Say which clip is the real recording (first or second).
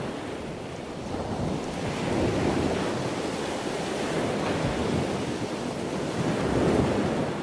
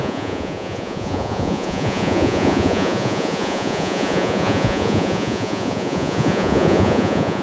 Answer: first